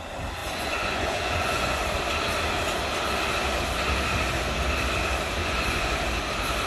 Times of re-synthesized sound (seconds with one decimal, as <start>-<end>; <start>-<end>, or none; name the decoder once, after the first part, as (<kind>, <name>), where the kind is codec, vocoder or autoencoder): 0.4-1.8 (vocoder, Vocos); 5.4-6.0